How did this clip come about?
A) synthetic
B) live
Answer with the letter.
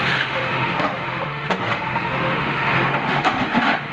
A